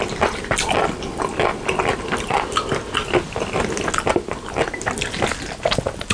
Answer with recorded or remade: recorded